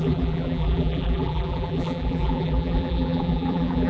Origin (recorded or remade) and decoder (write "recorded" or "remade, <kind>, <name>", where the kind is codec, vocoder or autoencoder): remade, vocoder, BigVGAN v2